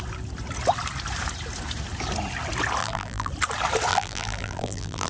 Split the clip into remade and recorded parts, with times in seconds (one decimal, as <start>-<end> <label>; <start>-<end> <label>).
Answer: 0.0-2.8 recorded; 2.8-3.3 remade; 3.3-3.9 recorded; 3.9-5.1 remade